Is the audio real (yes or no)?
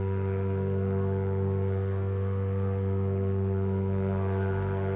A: no